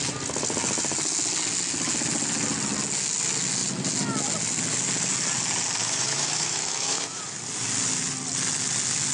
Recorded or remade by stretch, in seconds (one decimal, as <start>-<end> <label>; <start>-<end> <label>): 0.0-5.8 recorded; 5.8-7.2 remade; 7.2-9.1 recorded